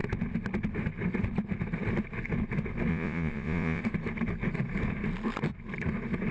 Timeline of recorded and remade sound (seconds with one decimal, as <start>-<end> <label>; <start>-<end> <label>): 0.0-2.9 recorded; 2.9-3.8 remade; 3.8-6.3 recorded